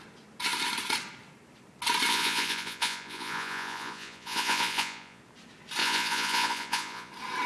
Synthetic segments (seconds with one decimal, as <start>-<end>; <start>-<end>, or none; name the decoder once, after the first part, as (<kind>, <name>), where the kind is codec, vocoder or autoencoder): 2.1-5.2 (vocoder, Vocos); 5.8-7.1